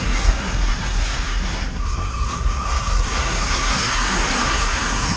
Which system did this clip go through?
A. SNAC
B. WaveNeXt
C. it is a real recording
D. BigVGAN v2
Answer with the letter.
A